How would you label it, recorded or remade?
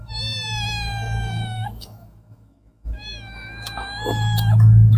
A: remade